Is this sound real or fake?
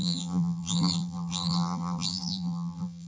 fake